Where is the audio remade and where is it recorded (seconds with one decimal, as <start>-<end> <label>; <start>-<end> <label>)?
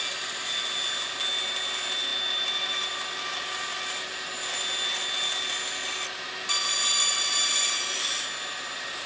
0.0-9.1 recorded